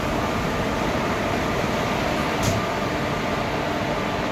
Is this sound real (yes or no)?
no